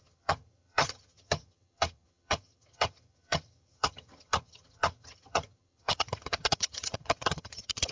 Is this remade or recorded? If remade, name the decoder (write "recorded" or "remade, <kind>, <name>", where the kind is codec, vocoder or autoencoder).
remade, vocoder, HiFi-GAN